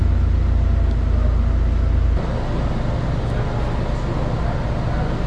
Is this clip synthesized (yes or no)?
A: no